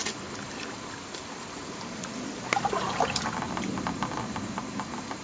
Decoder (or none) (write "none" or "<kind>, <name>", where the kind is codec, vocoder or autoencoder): none